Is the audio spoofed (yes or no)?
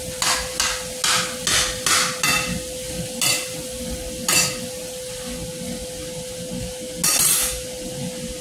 no